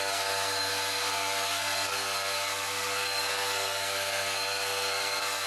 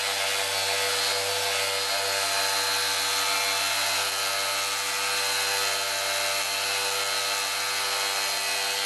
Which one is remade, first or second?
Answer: first